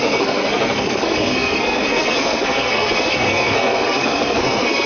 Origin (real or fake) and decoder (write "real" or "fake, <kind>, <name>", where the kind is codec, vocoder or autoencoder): fake, codec, SNAC